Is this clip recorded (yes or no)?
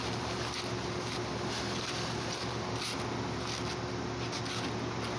yes